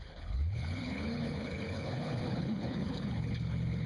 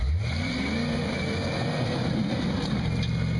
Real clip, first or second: second